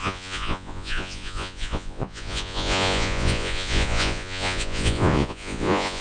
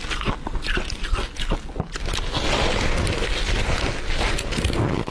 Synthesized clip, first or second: first